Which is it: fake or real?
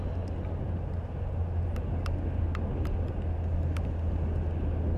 real